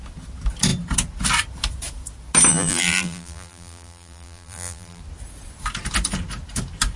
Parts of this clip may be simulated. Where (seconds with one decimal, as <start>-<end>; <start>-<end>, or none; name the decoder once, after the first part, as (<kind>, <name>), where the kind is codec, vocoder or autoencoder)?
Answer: 2.5-5.0 (vocoder, BigVGAN v2)